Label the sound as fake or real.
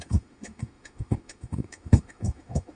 fake